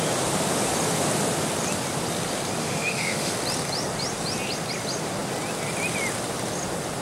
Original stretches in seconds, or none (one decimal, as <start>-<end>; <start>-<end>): 0.0-2.6; 3.3-7.0